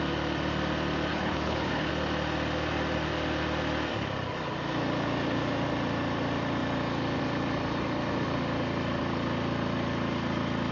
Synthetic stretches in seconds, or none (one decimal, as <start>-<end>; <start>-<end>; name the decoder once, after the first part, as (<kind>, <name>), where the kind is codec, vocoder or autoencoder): 1.1-1.9 (codec, HILCodec)